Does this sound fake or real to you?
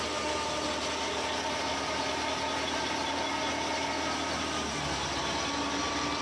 real